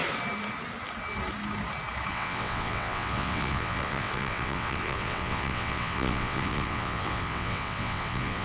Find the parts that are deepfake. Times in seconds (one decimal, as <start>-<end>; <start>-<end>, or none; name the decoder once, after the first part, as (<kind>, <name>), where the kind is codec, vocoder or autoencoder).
2.1-8.4 (vocoder, WaveNeXt)